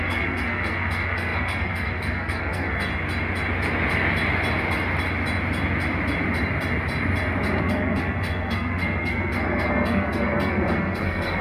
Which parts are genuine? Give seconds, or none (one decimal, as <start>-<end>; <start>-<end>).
2.9-7.6